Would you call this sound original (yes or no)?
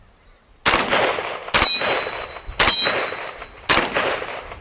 yes